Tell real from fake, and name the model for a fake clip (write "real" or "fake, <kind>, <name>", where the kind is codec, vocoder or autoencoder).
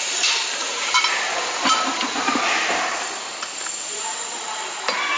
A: fake, vocoder, BigVGAN v2